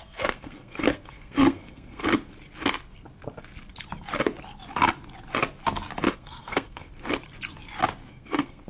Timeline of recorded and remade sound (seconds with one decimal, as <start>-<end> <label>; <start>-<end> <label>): 0.0-2.0 remade; 2.0-6.1 recorded; 6.1-6.8 remade; 6.8-8.1 recorded; 8.1-8.7 remade